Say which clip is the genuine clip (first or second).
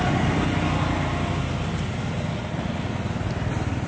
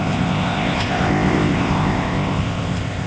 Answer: first